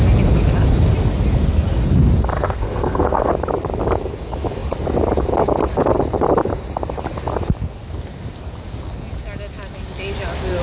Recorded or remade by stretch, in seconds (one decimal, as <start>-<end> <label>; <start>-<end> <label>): 0.0-2.3 recorded; 2.3-3.3 remade; 3.3-10.6 recorded